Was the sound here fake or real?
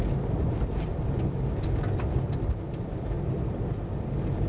real